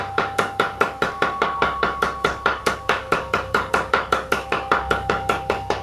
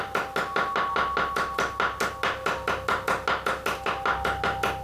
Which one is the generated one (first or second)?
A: first